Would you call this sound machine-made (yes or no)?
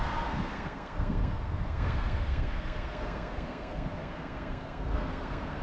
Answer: yes